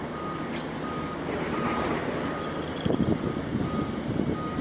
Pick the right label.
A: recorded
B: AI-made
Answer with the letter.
A